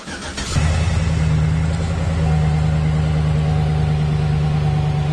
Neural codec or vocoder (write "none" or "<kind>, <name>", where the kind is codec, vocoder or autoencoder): none